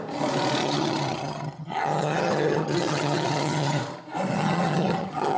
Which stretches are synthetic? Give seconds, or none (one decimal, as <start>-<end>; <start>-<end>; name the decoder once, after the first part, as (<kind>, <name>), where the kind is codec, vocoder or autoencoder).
0.6-3.8 (vocoder, HiFi-GAN); 4.3-5.4

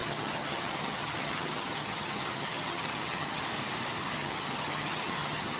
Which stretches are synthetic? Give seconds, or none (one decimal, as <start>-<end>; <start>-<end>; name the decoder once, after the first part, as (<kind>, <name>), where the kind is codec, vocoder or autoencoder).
0.0-3.4 (vocoder, HiFi-GAN); 4.2-5.6